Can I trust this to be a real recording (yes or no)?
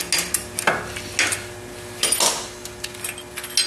yes